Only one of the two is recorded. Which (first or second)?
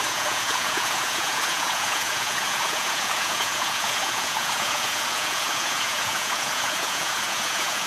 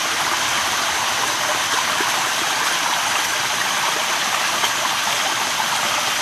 second